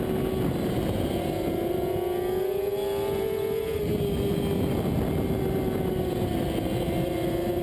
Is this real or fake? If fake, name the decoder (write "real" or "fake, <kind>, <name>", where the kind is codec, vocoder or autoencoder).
real